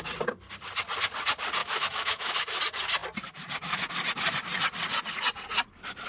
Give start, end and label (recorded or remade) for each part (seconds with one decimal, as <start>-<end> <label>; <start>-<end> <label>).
0.0-1.6 recorded; 1.6-2.6 remade; 2.6-6.1 recorded

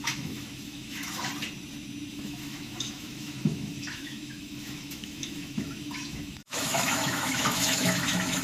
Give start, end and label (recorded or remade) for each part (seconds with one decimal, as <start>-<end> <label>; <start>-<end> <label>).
0.0-1.3 remade; 1.3-2.1 recorded; 2.1-8.4 remade

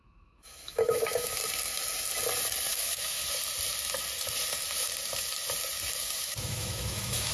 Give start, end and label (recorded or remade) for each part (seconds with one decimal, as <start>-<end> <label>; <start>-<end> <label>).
0.0-1.4 remade; 1.4-2.7 recorded; 2.7-3.2 remade; 3.2-6.0 recorded; 6.0-7.3 remade

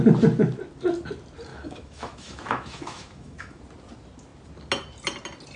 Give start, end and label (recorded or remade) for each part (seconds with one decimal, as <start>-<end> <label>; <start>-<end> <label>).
0.0-1.5 recorded; 1.5-3.6 remade; 3.6-5.6 recorded

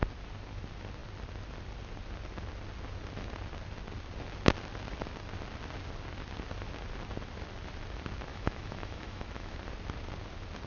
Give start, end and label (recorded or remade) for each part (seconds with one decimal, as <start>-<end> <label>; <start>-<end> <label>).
0.0-8.3 recorded; 8.3-9.6 remade; 9.6-10.7 recorded